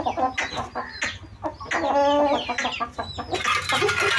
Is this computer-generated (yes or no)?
no